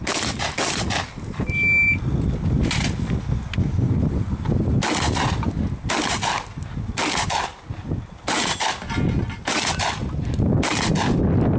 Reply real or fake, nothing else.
real